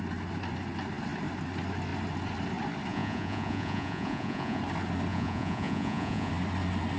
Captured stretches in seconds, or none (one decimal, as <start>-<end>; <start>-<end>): 0.0-2.9; 4.6-5.1; 6.3-7.0